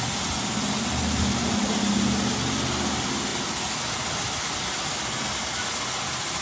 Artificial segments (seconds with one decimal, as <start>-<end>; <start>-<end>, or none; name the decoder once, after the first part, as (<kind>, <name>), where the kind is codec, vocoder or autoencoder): none